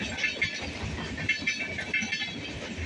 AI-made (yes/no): no